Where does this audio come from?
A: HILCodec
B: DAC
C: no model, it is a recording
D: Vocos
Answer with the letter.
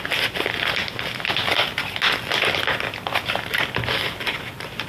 C